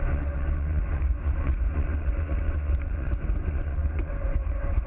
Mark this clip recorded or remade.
remade